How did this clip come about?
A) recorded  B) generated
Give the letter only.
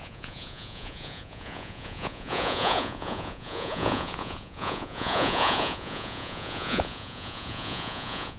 B